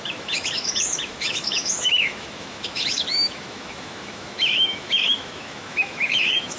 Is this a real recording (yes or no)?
no